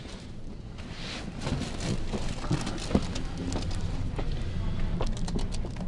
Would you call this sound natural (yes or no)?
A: yes